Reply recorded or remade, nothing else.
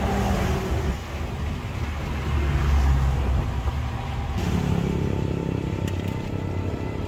recorded